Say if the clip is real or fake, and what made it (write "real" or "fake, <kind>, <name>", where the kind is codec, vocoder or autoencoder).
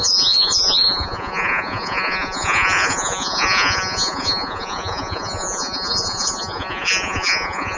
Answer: fake, vocoder, Vocos